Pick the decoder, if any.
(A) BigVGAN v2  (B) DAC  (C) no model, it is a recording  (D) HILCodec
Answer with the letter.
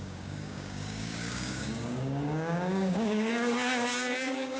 B